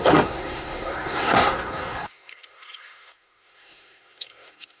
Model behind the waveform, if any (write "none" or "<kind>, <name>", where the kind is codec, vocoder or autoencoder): codec, SNAC